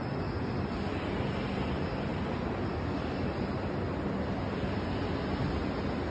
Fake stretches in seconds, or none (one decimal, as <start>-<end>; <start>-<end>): none